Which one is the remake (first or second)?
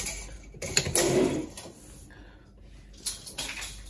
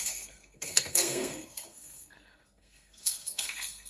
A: second